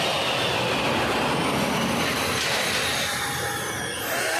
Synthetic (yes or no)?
no